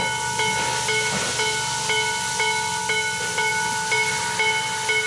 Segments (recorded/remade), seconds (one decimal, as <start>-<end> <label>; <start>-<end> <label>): 0.0-5.1 recorded